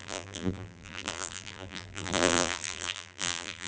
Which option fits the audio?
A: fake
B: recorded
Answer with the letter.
A